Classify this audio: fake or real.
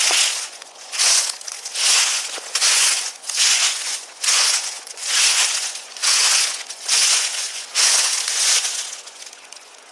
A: fake